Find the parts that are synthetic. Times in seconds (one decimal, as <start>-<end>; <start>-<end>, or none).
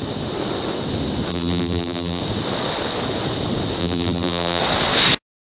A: 1.3-2.2; 3.8-4.6